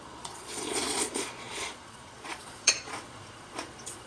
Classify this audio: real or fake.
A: fake